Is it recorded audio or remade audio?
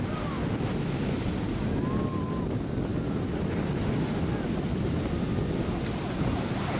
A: recorded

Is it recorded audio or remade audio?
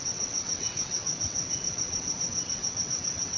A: remade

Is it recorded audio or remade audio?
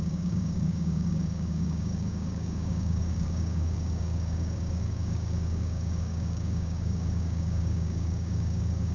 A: remade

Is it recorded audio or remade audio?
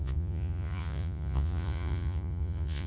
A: remade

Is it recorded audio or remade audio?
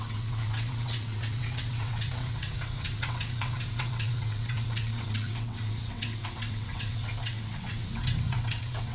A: remade